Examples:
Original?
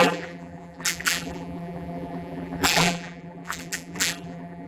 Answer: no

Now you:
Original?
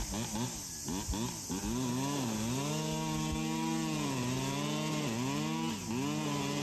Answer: yes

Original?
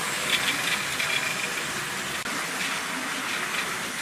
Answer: yes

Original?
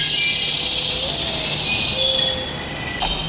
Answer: yes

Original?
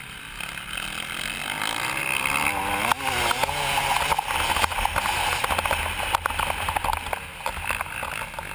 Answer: yes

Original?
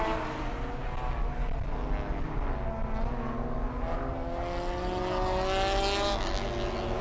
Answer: yes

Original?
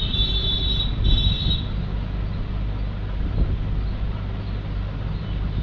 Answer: yes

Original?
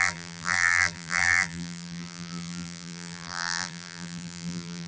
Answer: no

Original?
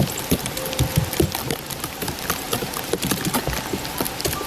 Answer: yes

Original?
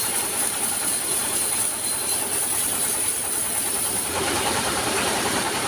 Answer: no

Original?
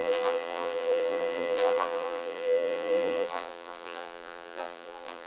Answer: no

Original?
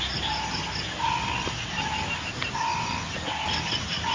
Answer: yes